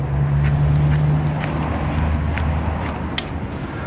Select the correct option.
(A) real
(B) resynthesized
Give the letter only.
A